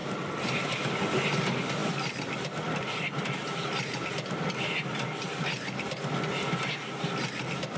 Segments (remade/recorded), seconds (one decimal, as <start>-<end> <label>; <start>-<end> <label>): 0.0-7.8 recorded